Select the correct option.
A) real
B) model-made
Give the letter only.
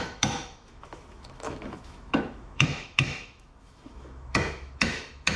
B